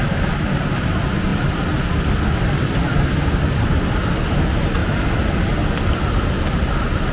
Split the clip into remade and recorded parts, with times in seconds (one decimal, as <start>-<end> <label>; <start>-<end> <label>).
0.0-7.1 recorded